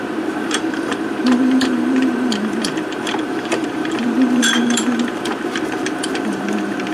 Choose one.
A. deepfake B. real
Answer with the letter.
A